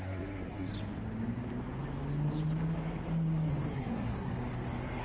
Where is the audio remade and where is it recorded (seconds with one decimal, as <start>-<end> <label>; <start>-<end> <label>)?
0.0-0.7 remade; 0.7-3.7 recorded; 3.7-4.3 remade; 4.3-5.0 recorded